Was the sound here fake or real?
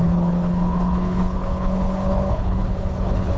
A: fake